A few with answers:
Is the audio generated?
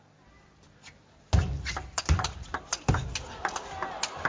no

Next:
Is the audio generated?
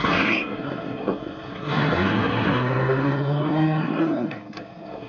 yes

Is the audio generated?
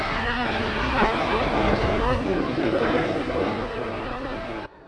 yes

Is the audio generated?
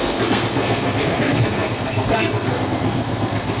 yes